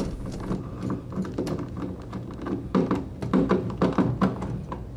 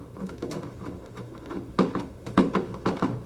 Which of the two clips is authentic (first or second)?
first